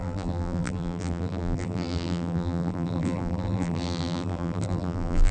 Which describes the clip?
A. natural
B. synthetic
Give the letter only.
B